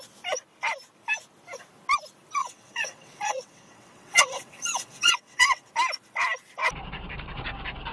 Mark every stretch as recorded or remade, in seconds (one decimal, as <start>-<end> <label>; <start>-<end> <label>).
0.0-2.4 recorded; 2.4-5.7 remade; 5.7-7.9 recorded